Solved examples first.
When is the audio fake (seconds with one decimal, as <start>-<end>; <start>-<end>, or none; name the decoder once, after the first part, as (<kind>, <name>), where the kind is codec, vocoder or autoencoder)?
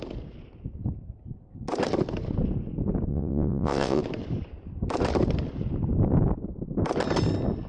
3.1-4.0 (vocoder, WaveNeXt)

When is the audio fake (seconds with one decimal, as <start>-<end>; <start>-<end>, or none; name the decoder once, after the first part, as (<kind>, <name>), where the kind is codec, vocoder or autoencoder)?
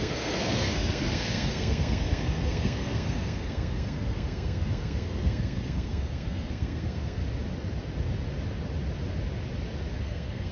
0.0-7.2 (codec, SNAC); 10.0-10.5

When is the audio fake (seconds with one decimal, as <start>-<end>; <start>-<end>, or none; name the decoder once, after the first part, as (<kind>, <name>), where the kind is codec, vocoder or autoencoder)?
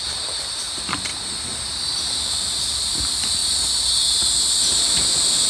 0.0-1.1 (vocoder, BigVGAN v2); 2.0-3.4; 4.8-5.5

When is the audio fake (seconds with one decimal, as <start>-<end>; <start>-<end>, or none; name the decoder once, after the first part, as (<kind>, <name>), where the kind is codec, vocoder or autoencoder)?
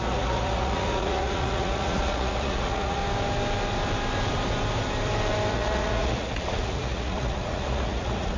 0.0-3.0 (vocoder, Vocos); 5.5-8.4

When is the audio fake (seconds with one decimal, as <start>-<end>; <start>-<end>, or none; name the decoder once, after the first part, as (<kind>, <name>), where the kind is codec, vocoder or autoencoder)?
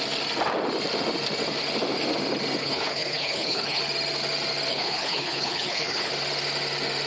2.6-3.8 (codec, HILCodec); 4.7-6.1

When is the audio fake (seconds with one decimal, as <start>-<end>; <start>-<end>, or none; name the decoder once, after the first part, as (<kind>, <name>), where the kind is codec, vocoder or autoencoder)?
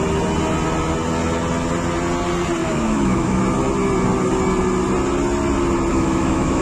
2.6-3.4 (autoencoder, DAC-VAE); 5.9-6.6